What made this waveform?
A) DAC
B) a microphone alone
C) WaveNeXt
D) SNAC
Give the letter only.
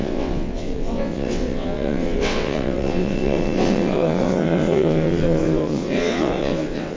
C